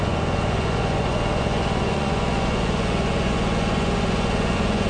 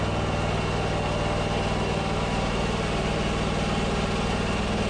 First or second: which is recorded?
second